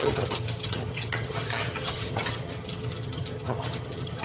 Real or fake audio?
fake